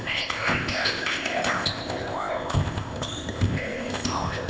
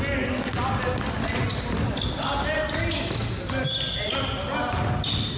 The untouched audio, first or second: second